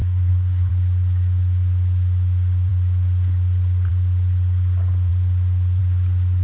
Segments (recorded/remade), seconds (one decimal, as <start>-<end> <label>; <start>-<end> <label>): 0.0-0.7 remade; 0.7-6.4 recorded